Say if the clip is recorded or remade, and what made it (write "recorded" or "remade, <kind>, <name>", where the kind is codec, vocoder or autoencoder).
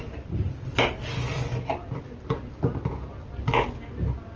recorded